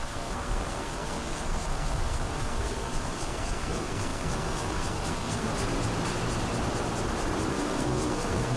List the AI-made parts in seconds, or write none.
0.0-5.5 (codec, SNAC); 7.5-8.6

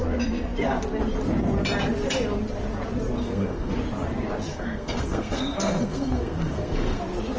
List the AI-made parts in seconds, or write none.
3.2-3.7 (codec, SNAC); 4.5-7.0